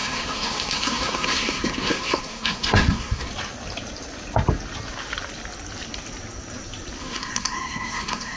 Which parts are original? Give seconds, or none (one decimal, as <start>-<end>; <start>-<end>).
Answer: 3.3-7.0